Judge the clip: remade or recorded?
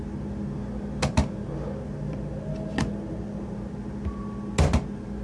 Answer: recorded